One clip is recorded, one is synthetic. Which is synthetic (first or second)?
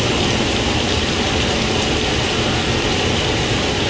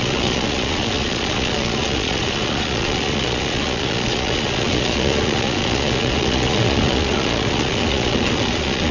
second